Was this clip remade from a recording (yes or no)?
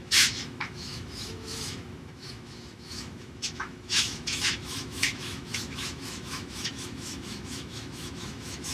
yes